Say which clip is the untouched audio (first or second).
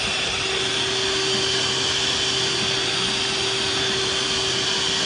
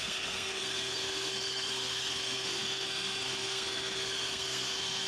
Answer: first